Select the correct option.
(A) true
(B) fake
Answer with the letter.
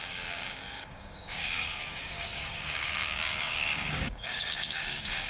B